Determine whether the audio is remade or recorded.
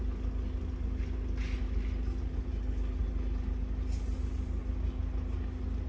recorded